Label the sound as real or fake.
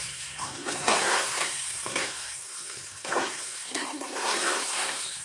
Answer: fake